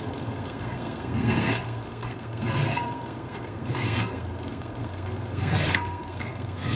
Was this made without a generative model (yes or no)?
no